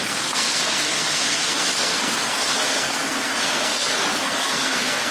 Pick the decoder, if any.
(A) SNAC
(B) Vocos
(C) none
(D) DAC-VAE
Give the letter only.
A